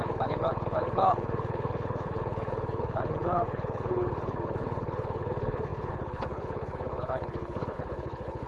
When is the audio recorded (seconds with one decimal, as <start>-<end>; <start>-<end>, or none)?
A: none

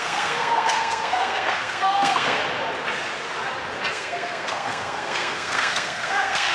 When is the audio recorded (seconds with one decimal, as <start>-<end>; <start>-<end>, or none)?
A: 2.4-3.9